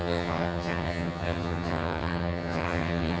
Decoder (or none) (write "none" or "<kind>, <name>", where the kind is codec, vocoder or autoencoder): vocoder, HiFi-GAN